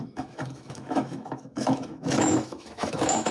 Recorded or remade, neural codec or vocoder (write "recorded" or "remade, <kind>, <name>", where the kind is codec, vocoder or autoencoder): remade, autoencoder, DAC-VAE